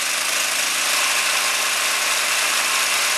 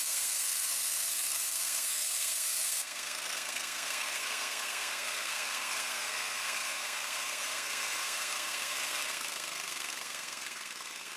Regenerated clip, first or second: second